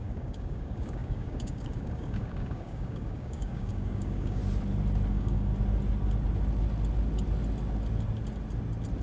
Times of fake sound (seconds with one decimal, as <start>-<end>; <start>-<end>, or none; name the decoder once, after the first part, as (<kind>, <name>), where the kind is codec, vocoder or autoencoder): 0.0-4.4 (codec, DAC); 5.1-5.5